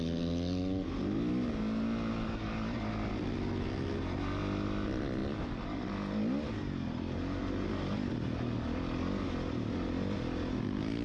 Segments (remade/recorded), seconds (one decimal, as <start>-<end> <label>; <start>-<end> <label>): 0.0-11.0 recorded